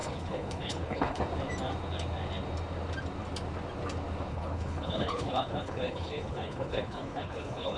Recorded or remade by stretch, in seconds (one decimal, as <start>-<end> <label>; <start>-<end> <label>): 0.0-1.2 remade; 1.2-4.3 recorded; 4.3-7.8 remade